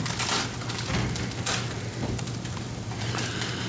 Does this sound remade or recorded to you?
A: recorded